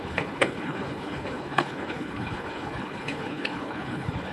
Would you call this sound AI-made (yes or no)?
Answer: yes